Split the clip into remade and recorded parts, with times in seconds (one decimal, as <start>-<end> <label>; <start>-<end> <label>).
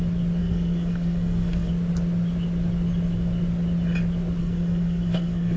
0.0-0.4 recorded; 0.4-1.7 remade; 1.7-4.4 recorded; 4.4-5.6 remade